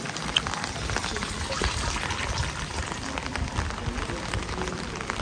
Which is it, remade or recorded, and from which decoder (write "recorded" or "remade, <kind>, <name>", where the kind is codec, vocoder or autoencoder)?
recorded